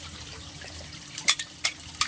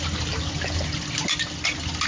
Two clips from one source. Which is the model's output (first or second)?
first